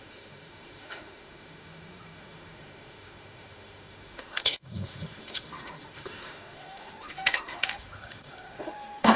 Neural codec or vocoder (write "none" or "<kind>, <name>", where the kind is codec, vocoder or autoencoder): autoencoder, DAC-VAE